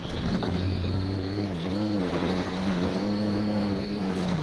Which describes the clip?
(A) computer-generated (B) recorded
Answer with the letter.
A